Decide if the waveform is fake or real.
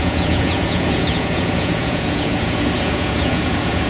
fake